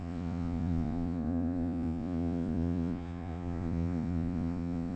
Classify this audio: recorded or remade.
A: remade